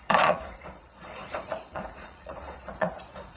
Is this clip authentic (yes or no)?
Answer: no